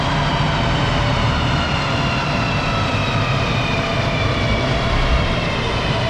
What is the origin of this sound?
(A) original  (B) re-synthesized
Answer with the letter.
B